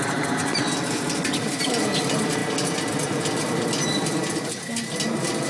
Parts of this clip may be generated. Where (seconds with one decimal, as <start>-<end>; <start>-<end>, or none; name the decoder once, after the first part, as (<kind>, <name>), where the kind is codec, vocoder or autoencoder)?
none